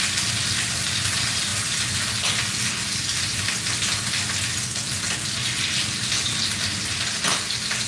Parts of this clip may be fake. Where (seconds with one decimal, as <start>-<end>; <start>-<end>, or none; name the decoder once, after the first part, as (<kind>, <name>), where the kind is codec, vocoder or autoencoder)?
none

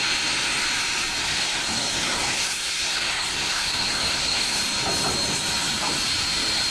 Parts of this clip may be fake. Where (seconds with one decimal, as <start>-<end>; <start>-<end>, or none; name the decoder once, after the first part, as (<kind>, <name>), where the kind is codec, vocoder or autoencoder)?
1.2-4.6 (codec, SNAC)

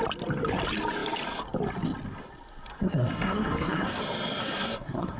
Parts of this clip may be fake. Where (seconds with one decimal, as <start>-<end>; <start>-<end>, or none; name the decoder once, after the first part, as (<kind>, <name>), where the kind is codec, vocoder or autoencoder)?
2.7-4.0 (codec, SNAC); 4.4-5.2